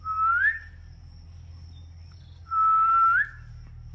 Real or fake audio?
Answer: real